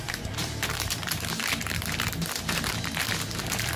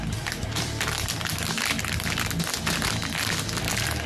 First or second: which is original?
second